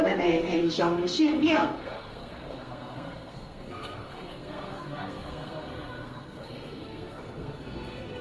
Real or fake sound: fake